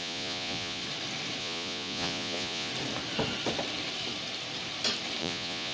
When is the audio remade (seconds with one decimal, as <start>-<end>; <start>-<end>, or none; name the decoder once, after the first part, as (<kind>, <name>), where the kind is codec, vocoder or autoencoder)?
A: 0.0-0.8 (vocoder, Vocos); 1.4-2.7; 5.2-5.7